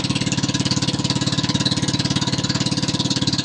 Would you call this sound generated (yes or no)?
yes